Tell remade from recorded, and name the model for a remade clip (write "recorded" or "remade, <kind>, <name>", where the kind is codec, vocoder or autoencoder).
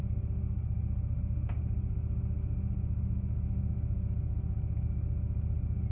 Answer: recorded